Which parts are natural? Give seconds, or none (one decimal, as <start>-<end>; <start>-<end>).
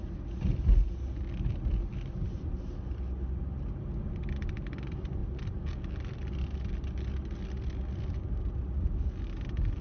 0.0-9.8